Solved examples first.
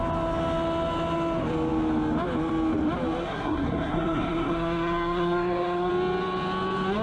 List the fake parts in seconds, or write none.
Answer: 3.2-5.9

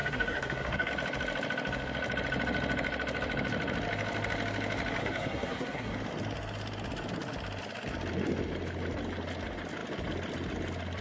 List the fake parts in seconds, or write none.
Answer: 0.0-0.9; 5.0-5.9